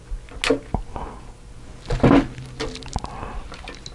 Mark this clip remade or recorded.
recorded